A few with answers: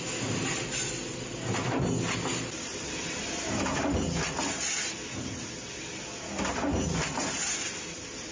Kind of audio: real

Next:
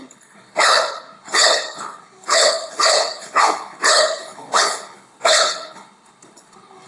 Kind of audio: fake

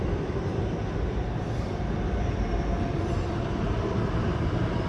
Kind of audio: real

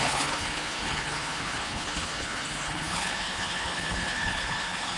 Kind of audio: fake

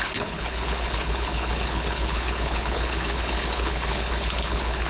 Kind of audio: fake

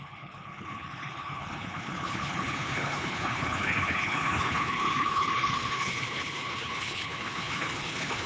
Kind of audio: fake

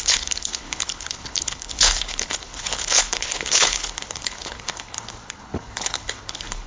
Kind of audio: fake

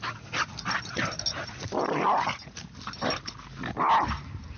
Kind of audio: real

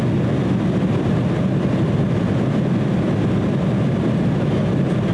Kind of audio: real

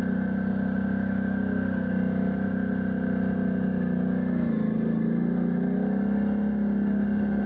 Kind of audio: real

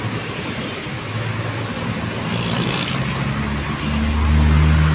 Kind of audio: real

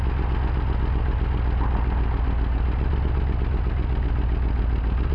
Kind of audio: real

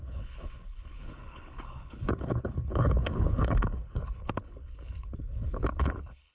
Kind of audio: fake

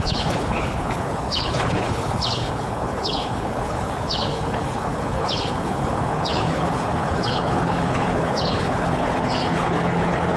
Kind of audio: fake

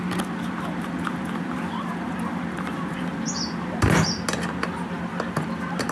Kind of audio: real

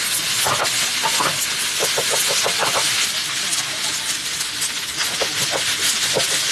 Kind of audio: real